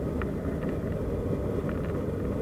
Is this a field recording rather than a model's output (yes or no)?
yes